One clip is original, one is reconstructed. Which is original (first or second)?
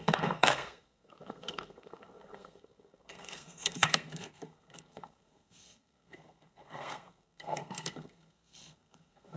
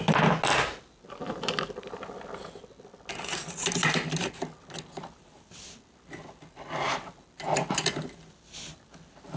second